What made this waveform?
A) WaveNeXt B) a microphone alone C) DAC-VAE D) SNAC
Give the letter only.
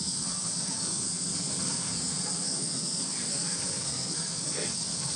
D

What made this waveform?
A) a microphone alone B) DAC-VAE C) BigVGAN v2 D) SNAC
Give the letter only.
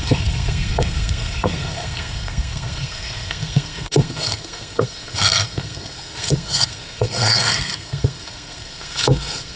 D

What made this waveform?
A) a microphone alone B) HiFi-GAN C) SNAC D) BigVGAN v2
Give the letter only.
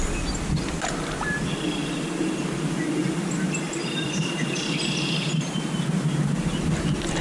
A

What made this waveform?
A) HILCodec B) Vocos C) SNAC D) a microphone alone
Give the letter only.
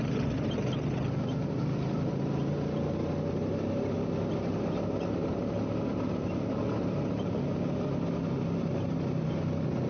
D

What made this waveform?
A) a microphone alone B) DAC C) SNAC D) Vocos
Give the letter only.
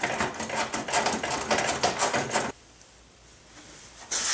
A